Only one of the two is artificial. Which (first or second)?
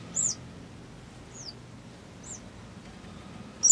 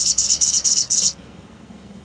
second